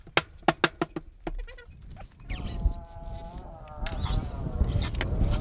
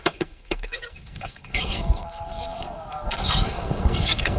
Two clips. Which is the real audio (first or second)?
first